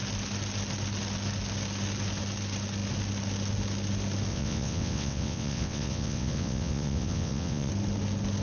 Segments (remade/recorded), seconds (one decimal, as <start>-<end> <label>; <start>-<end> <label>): 0.0-4.3 recorded; 4.3-7.7 remade; 7.7-8.4 recorded